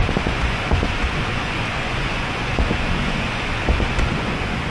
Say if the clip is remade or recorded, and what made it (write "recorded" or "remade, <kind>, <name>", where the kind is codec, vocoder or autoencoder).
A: remade, vocoder, Vocos